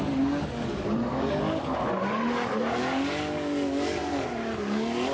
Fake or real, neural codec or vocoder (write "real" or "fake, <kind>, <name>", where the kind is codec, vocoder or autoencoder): fake, codec, DAC